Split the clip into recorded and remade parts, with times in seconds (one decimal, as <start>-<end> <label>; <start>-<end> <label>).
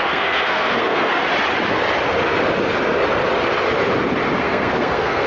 0.0-1.2 remade; 1.2-4.4 recorded; 4.4-5.3 remade